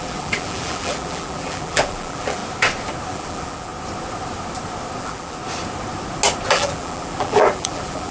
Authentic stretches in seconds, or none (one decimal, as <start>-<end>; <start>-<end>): 2.4-3.1; 3.7-5.0; 5.4-6.5